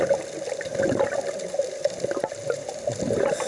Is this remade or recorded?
recorded